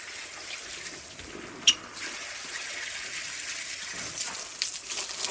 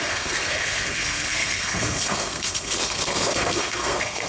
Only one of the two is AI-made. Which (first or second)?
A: second